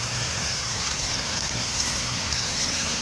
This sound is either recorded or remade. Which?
remade